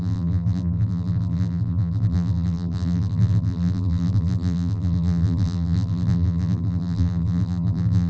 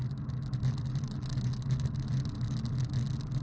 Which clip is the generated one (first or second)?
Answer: first